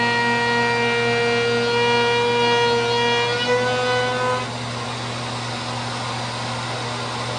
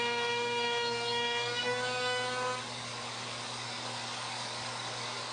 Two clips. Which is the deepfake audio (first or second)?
second